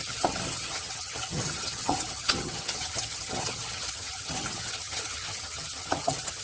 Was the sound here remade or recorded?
remade